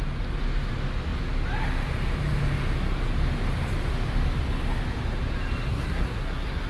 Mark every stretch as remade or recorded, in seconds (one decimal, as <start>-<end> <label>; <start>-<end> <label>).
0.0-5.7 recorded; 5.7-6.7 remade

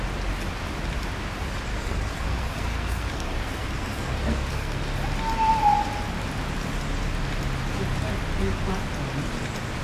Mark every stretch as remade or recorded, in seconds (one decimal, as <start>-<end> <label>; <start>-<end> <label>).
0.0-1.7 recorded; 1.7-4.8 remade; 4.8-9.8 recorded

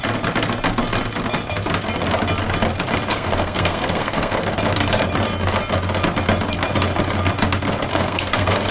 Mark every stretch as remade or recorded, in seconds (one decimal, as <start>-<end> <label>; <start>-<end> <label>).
0.0-3.1 recorded; 3.1-4.5 remade; 4.5-7.9 recorded; 7.9-8.7 remade

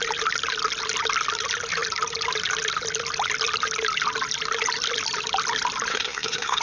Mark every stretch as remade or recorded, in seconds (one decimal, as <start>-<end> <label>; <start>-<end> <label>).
0.0-5.9 recorded; 5.9-6.6 remade

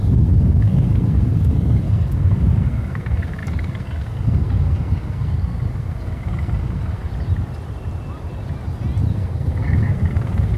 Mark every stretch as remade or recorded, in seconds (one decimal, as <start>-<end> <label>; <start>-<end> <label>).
0.0-7.1 remade; 7.1-9.1 recorded; 9.1-10.6 remade

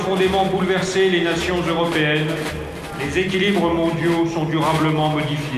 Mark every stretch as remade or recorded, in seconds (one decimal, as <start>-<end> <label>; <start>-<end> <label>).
0.0-5.6 recorded

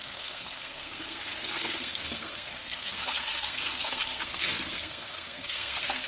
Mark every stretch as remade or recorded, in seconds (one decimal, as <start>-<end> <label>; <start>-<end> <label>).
0.0-6.1 remade

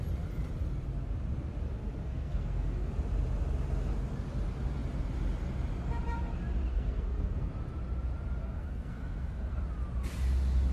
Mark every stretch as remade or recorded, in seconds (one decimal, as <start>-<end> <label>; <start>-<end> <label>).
0.0-1.8 recorded; 1.8-2.9 remade; 2.9-6.7 recorded; 6.7-7.5 remade; 7.5-8.4 recorded; 8.4-9.6 remade; 9.6-10.7 recorded